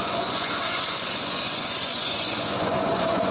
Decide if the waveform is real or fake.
fake